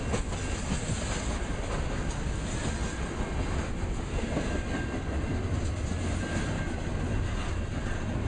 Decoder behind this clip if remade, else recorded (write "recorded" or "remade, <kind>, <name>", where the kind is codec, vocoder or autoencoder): recorded